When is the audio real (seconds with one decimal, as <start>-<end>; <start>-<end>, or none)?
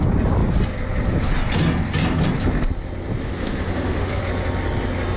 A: 0.0-3.2; 4.2-5.2